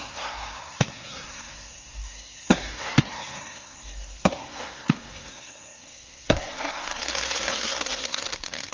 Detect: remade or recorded remade